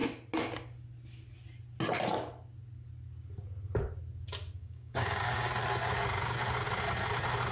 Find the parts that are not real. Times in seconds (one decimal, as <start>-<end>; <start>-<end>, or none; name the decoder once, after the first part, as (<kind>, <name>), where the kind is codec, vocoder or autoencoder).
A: 4.6-5.5 (codec, DAC)